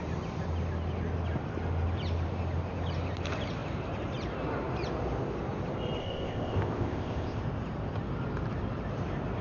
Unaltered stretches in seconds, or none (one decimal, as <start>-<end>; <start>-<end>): 0.0-6.0; 7.4-9.4